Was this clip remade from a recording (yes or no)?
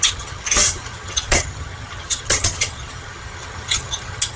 yes